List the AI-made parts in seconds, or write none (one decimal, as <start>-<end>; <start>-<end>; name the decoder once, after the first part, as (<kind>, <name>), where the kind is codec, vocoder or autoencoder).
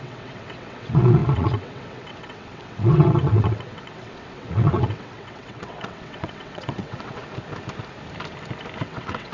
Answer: 0.0-7.2 (vocoder, WaveNeXt); 8.8-9.3